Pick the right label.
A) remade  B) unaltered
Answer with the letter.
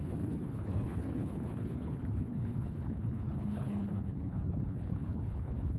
A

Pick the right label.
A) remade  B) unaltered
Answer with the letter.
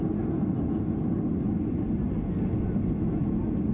B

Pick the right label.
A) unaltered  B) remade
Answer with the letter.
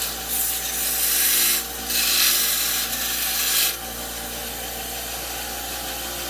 A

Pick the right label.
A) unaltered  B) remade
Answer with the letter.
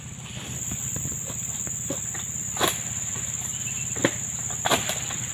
B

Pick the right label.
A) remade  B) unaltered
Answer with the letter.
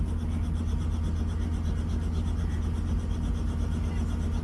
B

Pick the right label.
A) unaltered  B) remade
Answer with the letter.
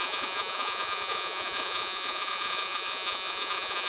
B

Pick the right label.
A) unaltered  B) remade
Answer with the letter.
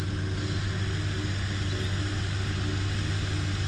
A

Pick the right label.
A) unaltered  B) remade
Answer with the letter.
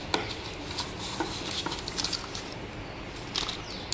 A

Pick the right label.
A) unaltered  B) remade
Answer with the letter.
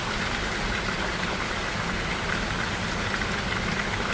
A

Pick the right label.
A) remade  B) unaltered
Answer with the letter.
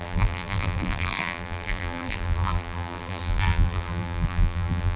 A